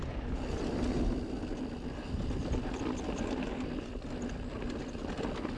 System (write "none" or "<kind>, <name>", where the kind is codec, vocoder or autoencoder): none